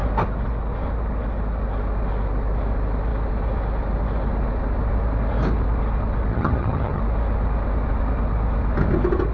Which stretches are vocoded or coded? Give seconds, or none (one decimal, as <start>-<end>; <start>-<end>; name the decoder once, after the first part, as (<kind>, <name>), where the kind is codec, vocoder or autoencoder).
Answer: 6.3-7.0 (vocoder, HiFi-GAN)